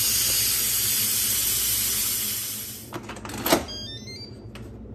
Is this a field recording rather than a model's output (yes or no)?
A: yes